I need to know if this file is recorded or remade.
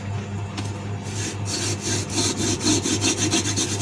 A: recorded